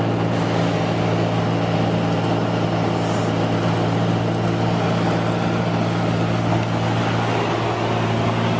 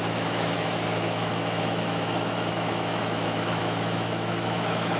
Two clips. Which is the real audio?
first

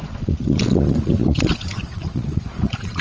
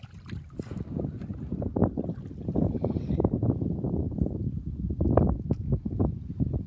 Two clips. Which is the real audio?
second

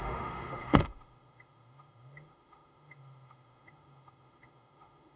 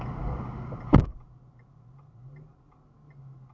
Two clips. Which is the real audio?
second